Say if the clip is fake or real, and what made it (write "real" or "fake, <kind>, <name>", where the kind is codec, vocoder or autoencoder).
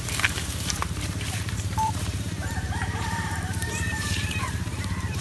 fake, vocoder, BigVGAN v2